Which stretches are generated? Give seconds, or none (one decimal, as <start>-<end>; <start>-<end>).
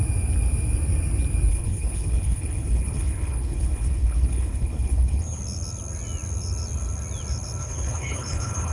1.5-5.4; 7.6-8.7